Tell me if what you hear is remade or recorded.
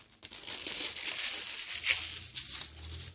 recorded